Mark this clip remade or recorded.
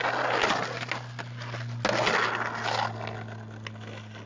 recorded